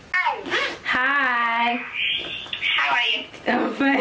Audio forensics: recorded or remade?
recorded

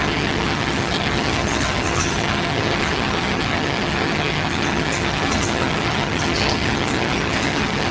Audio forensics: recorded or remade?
remade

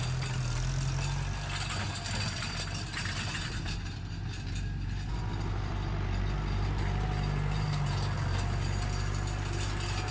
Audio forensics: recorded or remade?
recorded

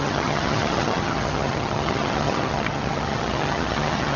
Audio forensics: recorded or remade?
remade